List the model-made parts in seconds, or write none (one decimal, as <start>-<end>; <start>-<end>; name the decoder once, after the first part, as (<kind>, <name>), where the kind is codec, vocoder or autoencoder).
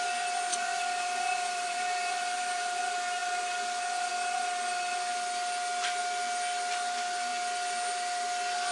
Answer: 0.5-2.8 (vocoder, BigVGAN v2)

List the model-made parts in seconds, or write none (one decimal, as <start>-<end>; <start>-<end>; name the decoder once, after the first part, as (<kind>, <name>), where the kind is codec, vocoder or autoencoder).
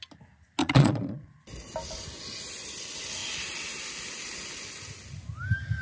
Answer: 0.6-1.4 (vocoder, Vocos)